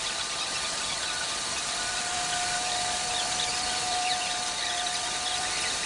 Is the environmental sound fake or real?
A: fake